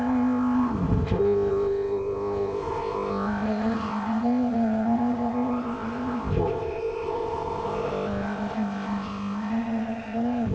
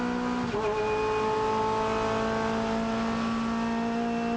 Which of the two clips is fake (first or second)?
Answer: first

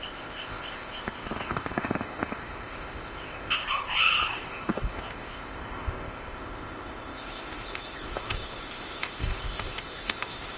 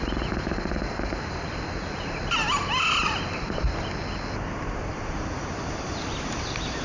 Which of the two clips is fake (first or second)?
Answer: first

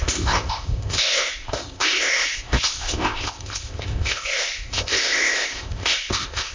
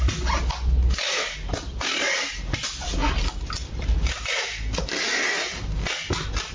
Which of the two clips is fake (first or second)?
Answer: first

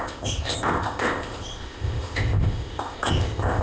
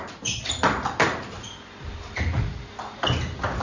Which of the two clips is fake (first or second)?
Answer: first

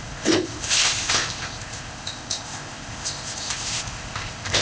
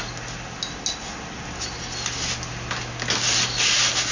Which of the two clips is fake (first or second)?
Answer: first